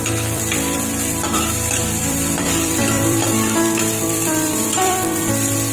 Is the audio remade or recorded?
remade